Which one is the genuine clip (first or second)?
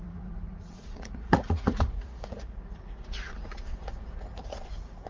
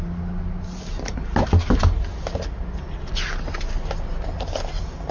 second